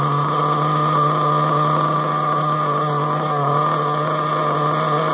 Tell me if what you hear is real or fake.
real